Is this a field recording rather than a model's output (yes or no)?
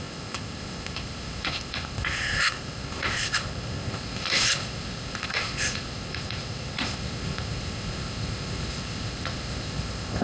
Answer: no